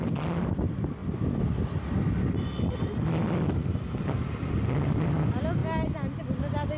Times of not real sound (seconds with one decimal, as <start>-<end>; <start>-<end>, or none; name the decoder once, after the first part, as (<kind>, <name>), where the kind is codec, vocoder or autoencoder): none